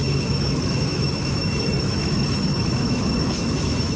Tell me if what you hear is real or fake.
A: fake